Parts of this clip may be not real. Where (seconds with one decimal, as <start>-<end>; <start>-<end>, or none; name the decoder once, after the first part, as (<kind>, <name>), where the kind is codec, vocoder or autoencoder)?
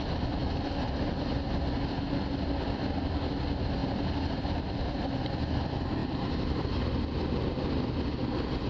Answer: 3.8-4.9 (vocoder, BigVGAN v2); 6.0-6.8